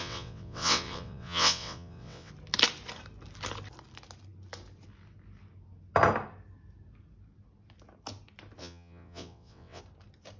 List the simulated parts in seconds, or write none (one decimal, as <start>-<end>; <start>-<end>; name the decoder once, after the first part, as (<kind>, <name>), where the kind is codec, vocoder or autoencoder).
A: 0.0-2.3 (vocoder, WaveNeXt); 8.6-9.8